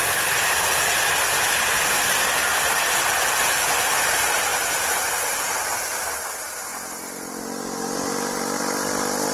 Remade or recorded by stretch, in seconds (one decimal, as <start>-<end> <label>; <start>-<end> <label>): 0.0-9.3 recorded

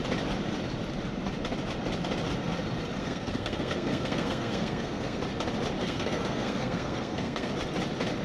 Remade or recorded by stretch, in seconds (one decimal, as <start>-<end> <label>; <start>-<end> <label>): 0.0-3.0 recorded; 3.0-5.2 remade; 5.2-5.8 recorded; 5.8-7.5 remade; 7.5-8.2 recorded

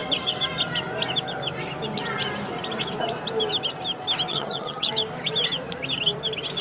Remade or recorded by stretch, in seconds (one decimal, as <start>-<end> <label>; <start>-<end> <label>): 0.0-4.3 recorded; 4.3-4.9 remade; 4.9-6.6 recorded

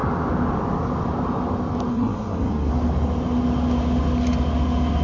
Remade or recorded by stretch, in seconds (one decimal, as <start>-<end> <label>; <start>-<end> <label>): 0.0-1.9 recorded; 1.9-2.7 remade; 2.7-5.0 recorded

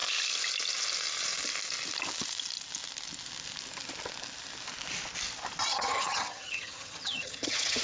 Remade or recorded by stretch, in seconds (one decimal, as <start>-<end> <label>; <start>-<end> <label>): 0.0-5.7 recorded; 5.7-7.8 remade